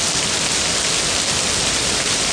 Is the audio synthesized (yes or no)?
no